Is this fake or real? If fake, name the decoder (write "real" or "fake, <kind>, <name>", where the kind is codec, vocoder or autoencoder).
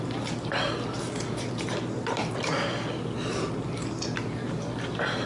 real